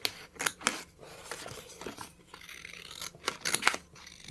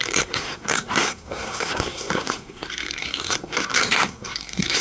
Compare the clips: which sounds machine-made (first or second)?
second